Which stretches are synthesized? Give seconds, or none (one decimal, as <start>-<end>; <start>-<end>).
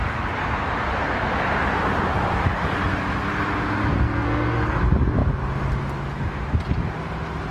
3.9-4.8